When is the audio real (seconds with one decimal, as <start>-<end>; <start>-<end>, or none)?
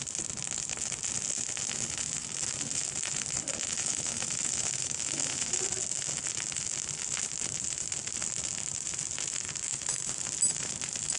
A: 0.0-3.8; 5.6-11.2